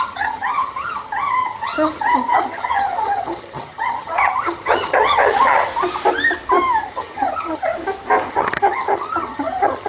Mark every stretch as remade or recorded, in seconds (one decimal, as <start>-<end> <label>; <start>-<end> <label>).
0.0-5.7 remade; 5.7-6.8 recorded; 6.8-7.7 remade; 7.7-8.3 recorded; 8.3-9.9 remade